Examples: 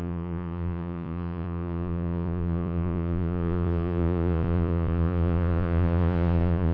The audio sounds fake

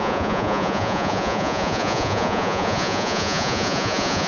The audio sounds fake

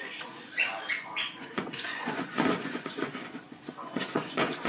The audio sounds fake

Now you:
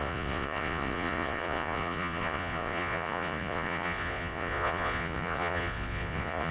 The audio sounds fake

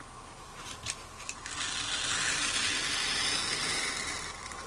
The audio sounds real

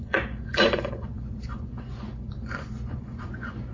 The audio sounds fake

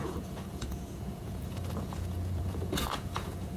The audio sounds fake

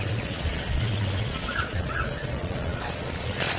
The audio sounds fake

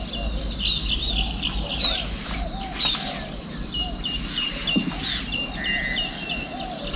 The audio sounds real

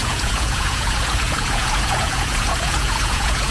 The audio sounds fake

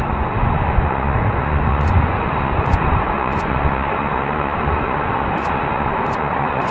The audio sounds fake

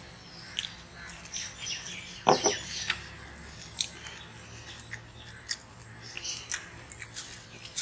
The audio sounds real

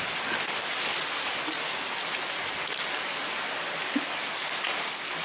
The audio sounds real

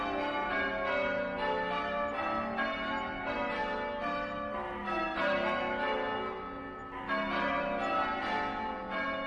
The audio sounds real